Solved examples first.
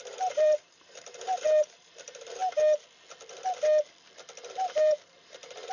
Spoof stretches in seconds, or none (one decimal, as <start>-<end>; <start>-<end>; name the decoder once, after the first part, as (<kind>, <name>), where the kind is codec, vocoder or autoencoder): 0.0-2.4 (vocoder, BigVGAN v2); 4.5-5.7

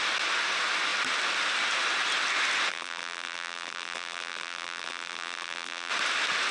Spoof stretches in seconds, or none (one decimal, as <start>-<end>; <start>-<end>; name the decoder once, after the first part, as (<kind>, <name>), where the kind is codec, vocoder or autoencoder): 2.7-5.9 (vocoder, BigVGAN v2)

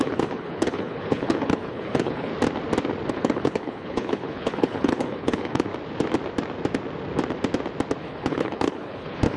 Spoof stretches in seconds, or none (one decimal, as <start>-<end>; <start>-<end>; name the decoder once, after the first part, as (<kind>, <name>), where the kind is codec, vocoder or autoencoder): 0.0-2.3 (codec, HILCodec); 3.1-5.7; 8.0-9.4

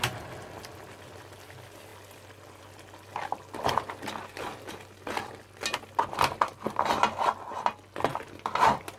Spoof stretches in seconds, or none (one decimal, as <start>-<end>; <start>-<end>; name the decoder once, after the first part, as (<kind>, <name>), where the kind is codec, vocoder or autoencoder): none

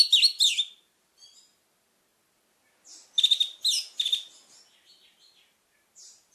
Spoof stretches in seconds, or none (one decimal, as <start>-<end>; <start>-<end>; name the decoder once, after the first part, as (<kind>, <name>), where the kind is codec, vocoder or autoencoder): none

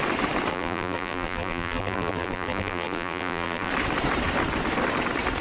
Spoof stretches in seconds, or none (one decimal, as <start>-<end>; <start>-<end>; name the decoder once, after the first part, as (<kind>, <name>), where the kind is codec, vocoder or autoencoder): 0.5-3.7 (vocoder, BigVGAN v2)

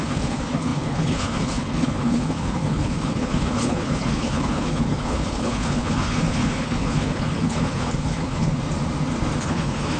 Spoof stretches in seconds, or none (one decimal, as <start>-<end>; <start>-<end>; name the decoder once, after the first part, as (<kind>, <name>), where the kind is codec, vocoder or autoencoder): 0.0-8.6 (codec, HILCodec); 9.4-10.0